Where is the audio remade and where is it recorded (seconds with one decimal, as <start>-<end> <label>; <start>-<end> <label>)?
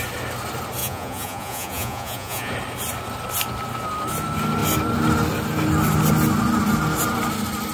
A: 0.0-0.8 recorded; 0.8-2.5 remade; 2.5-7.7 recorded